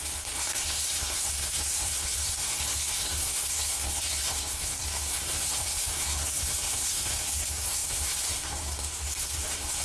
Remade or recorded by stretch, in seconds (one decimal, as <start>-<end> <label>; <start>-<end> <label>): 0.0-9.8 remade